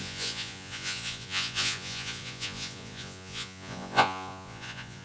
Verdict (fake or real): fake